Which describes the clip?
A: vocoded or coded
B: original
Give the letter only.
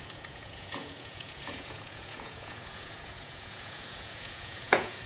A